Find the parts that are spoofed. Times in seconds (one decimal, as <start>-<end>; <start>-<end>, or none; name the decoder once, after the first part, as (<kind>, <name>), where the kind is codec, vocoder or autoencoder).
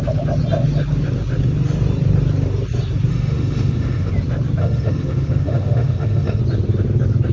3.1-4.1 (autoencoder, DAC-VAE); 4.6-6.4